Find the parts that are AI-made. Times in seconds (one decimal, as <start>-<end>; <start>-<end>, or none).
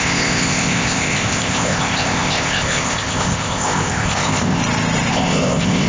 0.0-4.6; 5.1-5.9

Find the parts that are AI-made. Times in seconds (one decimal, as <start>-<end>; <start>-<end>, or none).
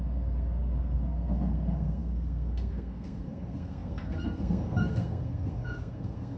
0.0-6.4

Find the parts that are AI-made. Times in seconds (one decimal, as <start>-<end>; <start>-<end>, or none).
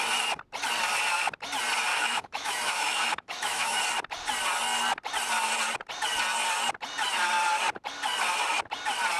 1.9-3.8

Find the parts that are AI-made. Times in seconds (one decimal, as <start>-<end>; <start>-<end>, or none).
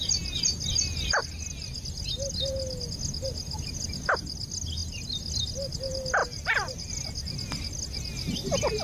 6.2-6.9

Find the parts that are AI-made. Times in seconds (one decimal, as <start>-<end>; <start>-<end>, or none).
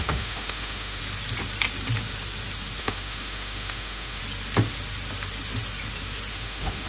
0.0-1.0; 2.8-4.2; 6.3-6.9